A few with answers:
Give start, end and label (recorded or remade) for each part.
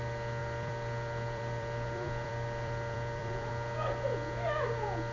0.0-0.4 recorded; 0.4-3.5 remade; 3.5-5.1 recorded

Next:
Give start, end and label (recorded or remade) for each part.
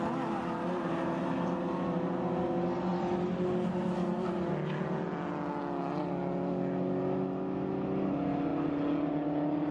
0.0-9.7 recorded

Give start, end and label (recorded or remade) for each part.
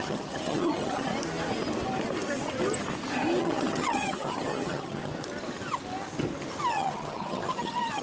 0.0-1.1 remade; 1.1-3.4 recorded; 3.4-5.1 remade; 5.1-6.7 recorded; 6.7-8.0 remade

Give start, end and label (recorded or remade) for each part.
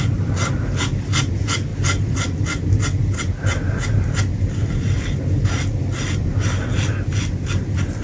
0.0-8.0 recorded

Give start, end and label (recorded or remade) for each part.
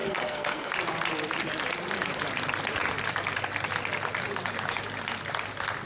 0.0-0.7 remade; 0.7-5.9 recorded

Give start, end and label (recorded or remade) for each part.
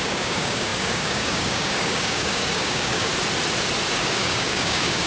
0.0-3.1 remade; 3.1-3.9 recorded; 3.9-5.1 remade